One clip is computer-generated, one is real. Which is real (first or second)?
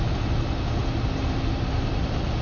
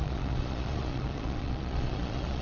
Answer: first